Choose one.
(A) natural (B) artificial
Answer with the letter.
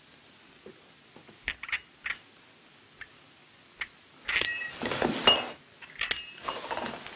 A